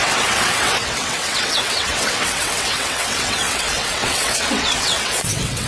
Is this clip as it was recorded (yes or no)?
no